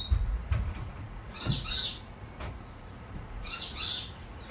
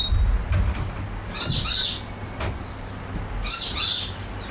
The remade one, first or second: first